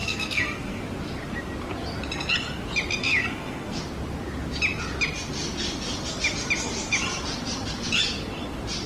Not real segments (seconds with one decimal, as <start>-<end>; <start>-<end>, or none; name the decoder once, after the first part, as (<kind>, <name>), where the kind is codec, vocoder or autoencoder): 0.0-0.8 (codec, SNAC); 3.0-3.8